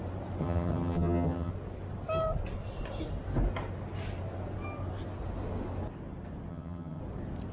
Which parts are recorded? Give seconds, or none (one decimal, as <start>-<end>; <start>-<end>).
0.0-0.4; 1.5-6.5; 7.0-7.5